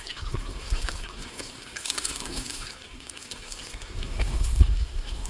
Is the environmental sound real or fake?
fake